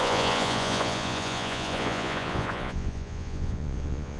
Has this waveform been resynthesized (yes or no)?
yes